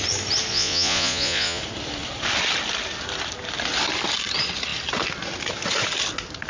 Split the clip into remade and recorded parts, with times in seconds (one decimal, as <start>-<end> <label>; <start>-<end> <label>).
0.0-0.5 recorded; 0.5-1.6 remade; 1.6-6.5 recorded